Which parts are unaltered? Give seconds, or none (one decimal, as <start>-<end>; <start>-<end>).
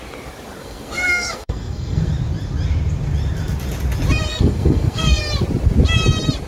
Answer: 0.0-0.6; 2.1-4.3; 5.2-6.5